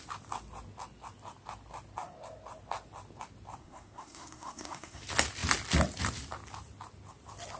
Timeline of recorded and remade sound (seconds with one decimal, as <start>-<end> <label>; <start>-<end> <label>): 0.0-3.6 recorded; 3.6-5.0 remade; 5.0-7.6 recorded